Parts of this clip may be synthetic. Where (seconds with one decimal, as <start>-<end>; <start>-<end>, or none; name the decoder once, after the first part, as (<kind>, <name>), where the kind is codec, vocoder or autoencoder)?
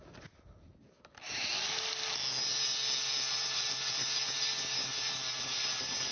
none